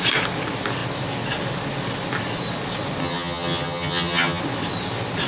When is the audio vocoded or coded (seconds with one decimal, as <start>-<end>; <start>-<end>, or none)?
3.0-4.4